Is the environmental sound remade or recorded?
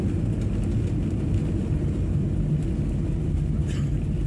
recorded